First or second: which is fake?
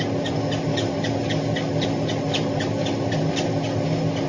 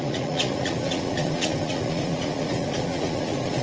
second